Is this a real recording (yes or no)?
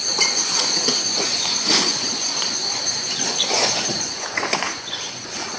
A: no